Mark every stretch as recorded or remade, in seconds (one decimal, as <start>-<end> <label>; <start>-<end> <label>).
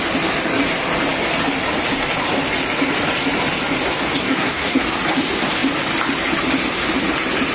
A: 0.0-4.2 recorded; 4.2-4.8 remade; 4.8-7.5 recorded